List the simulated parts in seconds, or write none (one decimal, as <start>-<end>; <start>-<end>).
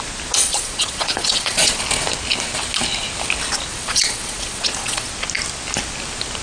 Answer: 0.4-1.8; 3.7-5.1